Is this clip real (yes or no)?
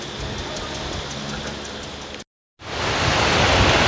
yes